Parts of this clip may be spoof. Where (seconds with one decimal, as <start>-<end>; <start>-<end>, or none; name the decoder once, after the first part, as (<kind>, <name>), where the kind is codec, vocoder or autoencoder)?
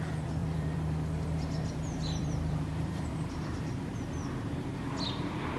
0.4-3.8 (vocoder, BigVGAN v2)